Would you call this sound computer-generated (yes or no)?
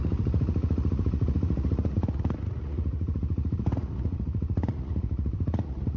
yes